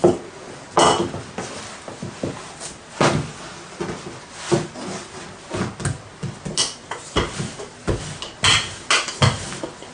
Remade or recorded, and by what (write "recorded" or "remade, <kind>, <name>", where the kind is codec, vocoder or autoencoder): recorded